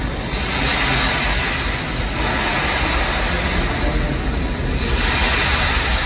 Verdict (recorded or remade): recorded